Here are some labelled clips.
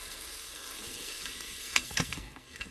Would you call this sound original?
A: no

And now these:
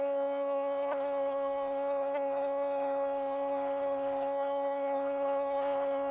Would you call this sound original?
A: no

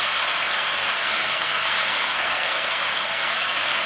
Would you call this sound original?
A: no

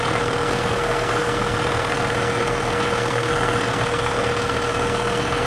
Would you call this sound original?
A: no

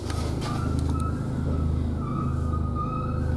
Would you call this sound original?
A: yes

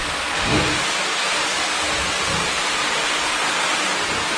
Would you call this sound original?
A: yes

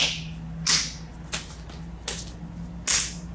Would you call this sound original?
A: yes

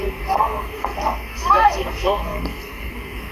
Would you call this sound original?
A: no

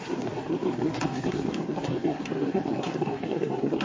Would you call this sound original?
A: no